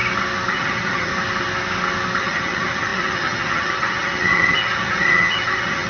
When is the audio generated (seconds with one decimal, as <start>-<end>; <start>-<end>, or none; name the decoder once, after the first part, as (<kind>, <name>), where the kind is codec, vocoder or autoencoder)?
0.5-1.1 (vocoder, HiFi-GAN); 2.2-5.9